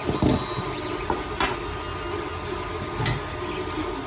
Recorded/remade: recorded